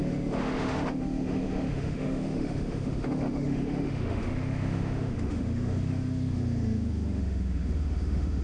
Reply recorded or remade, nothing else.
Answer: remade